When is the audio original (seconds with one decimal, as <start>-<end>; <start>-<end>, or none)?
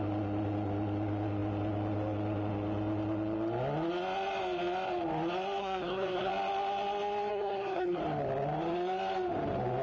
0.0-5.6; 6.3-7.3; 8.0-9.8